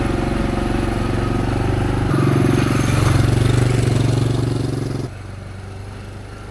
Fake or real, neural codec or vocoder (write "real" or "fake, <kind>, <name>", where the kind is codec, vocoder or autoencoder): real